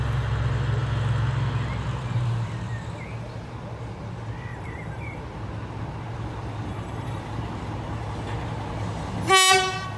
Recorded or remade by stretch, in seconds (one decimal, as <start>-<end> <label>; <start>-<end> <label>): 0.0-4.5 recorded; 4.5-5.2 remade; 5.2-6.7 recorded; 6.7-7.2 remade; 7.2-10.0 recorded